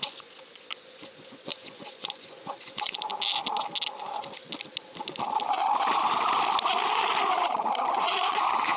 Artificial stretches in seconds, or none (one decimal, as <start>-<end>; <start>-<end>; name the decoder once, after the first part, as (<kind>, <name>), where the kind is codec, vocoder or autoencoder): 0.0-3.1 (vocoder, Vocos); 7.9-8.8